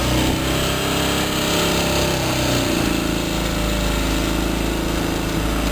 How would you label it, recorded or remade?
recorded